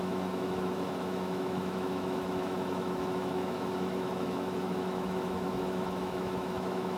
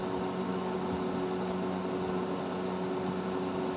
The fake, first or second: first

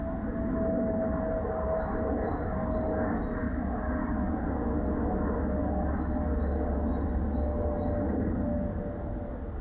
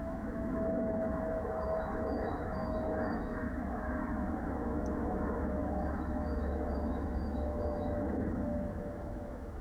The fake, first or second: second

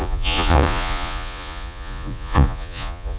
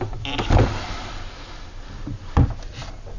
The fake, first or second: first